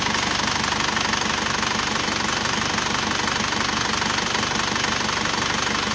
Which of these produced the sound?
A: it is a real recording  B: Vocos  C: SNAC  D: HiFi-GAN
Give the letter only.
A